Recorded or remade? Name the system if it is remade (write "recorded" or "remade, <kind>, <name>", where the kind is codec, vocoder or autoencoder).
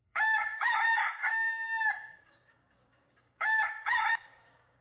remade, codec, DAC